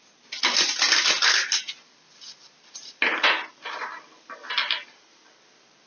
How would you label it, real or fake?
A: real